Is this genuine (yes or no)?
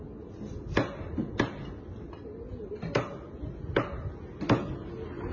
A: yes